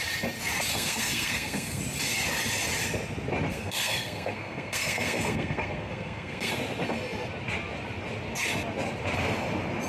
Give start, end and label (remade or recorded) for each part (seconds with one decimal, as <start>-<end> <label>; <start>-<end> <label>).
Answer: 0.0-0.7 recorded; 0.7-1.8 remade; 1.8-3.5 recorded; 3.5-6.5 remade; 6.5-9.9 recorded

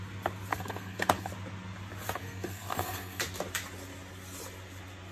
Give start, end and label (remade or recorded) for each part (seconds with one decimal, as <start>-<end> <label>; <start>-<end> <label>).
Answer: 0.0-0.5 recorded; 0.5-1.3 remade; 1.3-2.2 recorded; 2.2-3.2 remade; 3.2-5.1 recorded